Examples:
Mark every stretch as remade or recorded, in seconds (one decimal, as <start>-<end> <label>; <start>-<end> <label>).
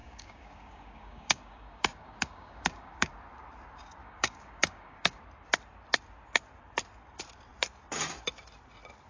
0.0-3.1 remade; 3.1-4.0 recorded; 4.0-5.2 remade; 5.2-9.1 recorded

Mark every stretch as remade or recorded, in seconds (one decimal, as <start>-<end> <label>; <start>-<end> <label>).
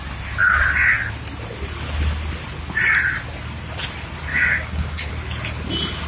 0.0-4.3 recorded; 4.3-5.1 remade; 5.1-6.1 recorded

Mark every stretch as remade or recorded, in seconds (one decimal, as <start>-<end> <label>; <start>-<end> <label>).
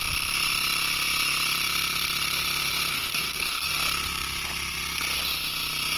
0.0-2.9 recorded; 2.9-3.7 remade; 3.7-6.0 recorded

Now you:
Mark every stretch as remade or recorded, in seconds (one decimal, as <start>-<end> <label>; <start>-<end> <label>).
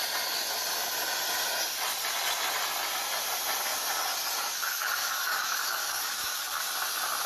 0.0-5.0 recorded; 5.0-6.7 remade; 6.7-7.3 recorded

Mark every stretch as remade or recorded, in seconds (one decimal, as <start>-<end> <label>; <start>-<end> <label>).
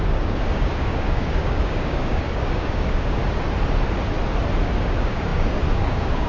0.0-3.2 remade; 3.2-4.6 recorded; 4.6-6.3 remade